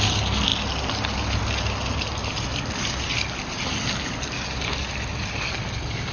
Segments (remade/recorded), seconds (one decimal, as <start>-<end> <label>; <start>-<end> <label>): 0.0-6.1 recorded